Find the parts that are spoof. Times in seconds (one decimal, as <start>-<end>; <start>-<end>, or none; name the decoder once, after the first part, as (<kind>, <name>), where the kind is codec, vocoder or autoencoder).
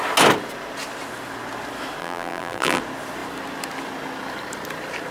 2.0-2.8 (vocoder, BigVGAN v2)